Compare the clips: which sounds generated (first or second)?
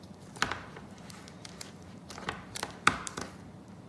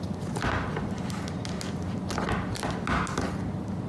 first